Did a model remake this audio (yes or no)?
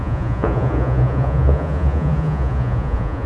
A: yes